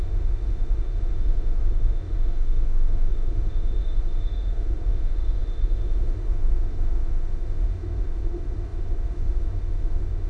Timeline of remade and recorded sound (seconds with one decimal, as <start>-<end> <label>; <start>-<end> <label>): 0.0-10.3 remade